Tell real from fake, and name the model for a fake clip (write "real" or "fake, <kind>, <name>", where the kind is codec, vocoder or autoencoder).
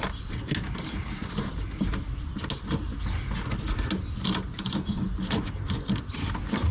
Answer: real